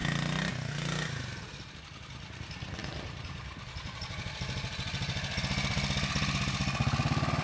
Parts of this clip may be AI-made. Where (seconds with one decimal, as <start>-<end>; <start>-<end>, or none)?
0.0-0.5; 2.8-5.4